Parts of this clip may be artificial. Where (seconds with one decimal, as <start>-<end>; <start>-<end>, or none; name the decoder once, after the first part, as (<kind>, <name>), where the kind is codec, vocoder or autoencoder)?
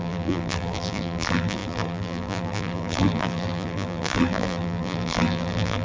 0.0-5.8 (vocoder, BigVGAN v2)